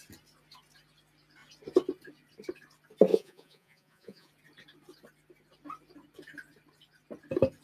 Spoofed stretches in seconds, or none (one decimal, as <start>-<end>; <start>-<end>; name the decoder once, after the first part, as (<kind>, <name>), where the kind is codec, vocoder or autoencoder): 3.1-4.3 (vocoder, Vocos)